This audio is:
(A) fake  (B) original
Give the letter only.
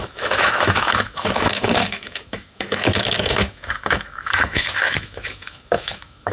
A